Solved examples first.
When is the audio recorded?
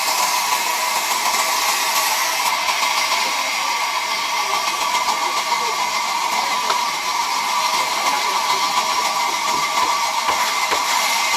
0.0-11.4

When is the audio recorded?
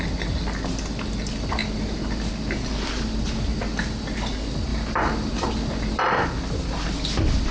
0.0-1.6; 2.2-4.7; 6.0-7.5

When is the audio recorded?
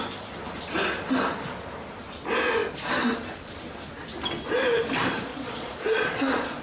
0.0-5.3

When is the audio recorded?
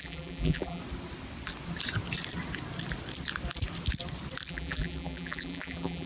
0.8-4.5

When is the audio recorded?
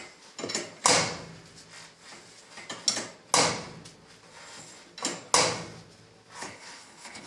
0.0-6.4